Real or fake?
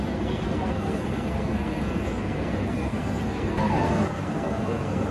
fake